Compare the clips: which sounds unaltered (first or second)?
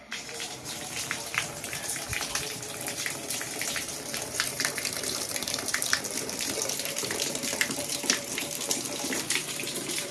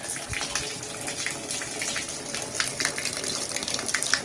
second